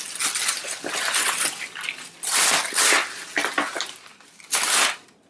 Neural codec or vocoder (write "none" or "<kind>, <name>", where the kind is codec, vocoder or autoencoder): none